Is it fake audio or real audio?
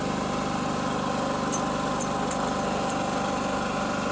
real